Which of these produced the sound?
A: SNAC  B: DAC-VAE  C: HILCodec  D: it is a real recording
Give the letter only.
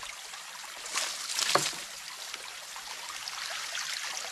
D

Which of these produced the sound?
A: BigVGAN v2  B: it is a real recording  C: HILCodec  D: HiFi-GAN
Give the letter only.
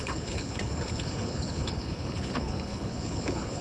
C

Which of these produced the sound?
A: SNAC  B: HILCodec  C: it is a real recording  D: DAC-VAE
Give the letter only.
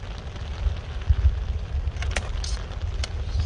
C